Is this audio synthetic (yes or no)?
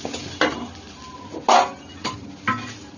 no